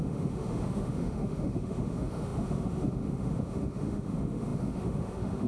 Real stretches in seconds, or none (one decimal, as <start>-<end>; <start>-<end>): none